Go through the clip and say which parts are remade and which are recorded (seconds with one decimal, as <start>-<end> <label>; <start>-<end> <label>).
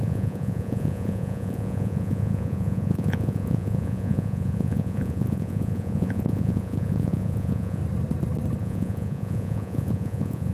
0.0-7.8 remade; 7.8-8.6 recorded; 8.6-10.5 remade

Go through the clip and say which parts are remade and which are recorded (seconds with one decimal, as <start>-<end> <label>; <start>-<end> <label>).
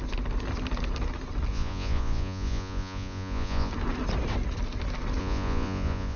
0.0-1.5 recorded; 1.5-3.7 remade; 3.7-5.2 recorded; 5.2-6.2 remade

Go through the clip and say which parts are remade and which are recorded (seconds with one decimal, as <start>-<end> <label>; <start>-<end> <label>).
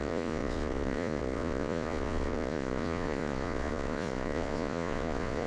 0.0-5.5 remade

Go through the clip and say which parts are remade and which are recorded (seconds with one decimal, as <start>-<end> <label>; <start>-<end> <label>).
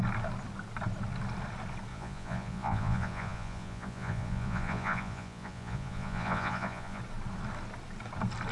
0.0-1.9 recorded; 1.9-7.0 remade; 7.0-8.5 recorded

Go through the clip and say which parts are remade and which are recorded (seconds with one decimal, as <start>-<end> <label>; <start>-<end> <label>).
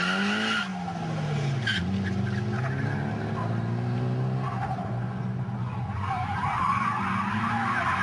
0.0-4.7 recorded; 4.7-7.0 remade; 7.0-8.0 recorded